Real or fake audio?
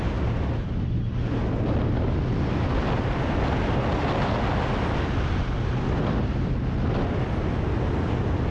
real